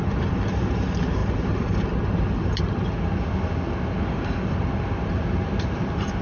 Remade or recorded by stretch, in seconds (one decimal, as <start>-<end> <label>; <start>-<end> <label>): 0.0-6.2 recorded